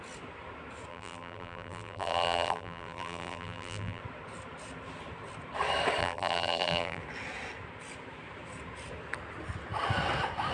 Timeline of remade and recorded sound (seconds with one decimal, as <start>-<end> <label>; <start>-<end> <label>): 0.0-0.9 recorded; 0.9-4.0 remade; 4.0-6.0 recorded; 6.0-7.0 remade; 7.0-10.5 recorded